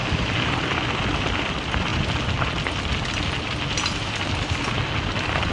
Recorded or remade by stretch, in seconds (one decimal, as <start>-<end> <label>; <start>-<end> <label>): 0.0-5.5 recorded